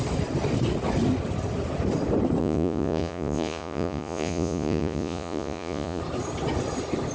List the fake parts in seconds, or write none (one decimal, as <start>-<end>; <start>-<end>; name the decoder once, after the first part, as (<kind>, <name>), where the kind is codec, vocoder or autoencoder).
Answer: 2.4-6.0 (vocoder, Vocos)